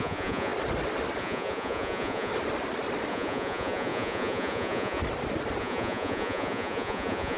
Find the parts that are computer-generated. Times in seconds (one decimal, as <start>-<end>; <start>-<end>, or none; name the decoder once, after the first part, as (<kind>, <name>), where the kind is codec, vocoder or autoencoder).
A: 0.0-0.5 (vocoder, Vocos); 1.2-2.3; 3.1-5.0; 5.6-7.4